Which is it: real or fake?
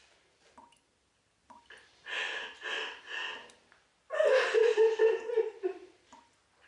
fake